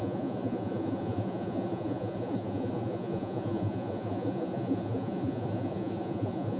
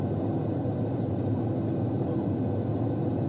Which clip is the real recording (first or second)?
second